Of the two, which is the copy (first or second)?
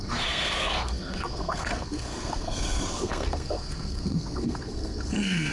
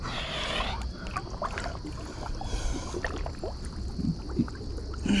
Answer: first